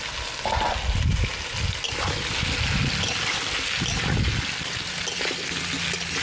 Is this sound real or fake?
real